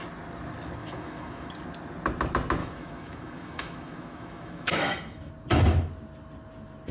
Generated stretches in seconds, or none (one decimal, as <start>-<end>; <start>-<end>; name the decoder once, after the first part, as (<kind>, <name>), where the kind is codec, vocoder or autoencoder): 0.8-1.5 (autoencoder, DAC-VAE); 2.6-5.3